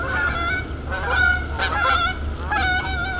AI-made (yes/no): no